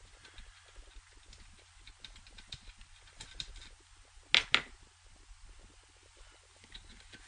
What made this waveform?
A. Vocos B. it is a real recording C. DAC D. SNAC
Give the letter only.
B